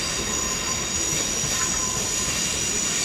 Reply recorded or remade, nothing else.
recorded